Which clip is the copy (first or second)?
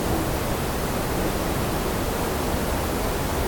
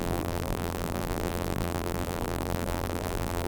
second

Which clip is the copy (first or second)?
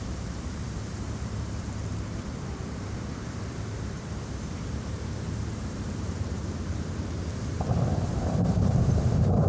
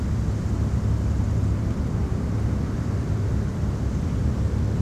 first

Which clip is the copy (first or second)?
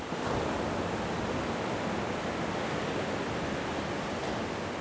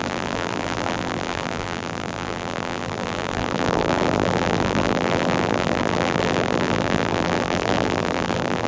second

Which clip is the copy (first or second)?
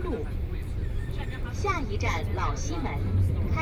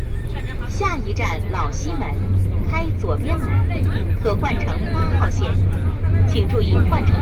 first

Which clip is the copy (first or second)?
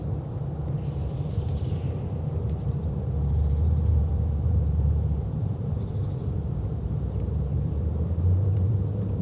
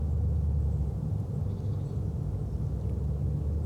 first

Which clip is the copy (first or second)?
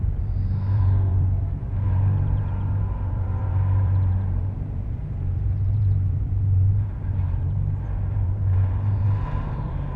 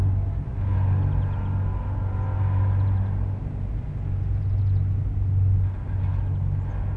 first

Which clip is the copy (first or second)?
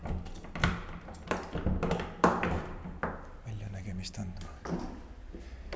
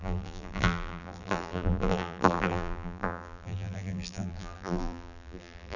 second